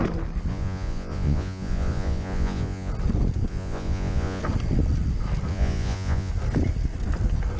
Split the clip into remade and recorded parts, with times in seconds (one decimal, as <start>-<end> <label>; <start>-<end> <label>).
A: 0.0-0.5 recorded; 0.5-2.9 remade; 2.9-3.5 recorded; 3.5-4.4 remade; 4.4-5.5 recorded; 5.5-6.3 remade; 6.3-7.6 recorded